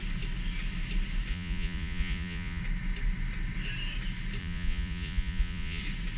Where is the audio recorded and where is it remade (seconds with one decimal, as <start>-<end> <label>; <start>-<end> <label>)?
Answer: 0.0-1.3 recorded; 1.3-2.6 remade; 2.6-4.4 recorded; 4.4-5.8 remade; 5.8-6.2 recorded